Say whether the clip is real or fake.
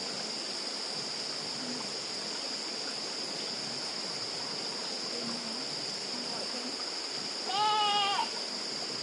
real